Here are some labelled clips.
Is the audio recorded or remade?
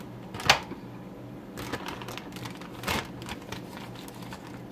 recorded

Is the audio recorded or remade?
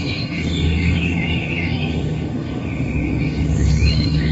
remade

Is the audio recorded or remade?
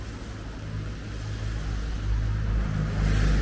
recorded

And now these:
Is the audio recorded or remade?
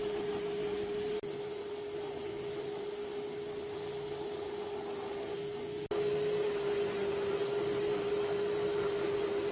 recorded